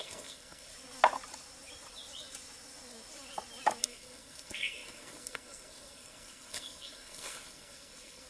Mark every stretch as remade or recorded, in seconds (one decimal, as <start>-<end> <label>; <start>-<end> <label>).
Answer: 0.0-0.7 remade; 0.7-3.8 recorded; 3.8-8.3 remade